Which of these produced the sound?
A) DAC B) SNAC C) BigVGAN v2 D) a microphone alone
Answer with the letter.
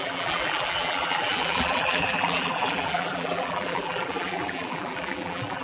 C